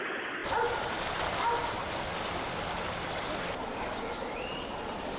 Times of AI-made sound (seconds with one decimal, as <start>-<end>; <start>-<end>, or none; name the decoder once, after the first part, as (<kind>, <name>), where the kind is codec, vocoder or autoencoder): 0.4-1.0 (vocoder, BigVGAN v2)